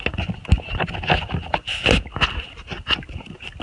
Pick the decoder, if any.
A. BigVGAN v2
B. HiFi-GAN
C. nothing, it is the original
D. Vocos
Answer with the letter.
C